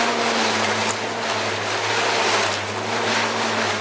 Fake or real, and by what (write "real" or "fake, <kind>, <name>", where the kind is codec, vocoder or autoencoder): real